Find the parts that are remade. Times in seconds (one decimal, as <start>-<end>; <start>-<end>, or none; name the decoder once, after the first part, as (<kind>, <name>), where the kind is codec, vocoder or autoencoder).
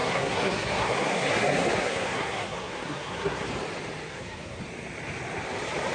0.0-3.5 (codec, SNAC); 4.1-4.6